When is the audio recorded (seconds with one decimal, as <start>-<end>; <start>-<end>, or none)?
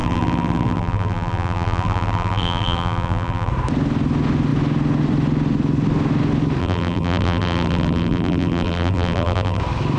3.5-6.6; 9.6-10.0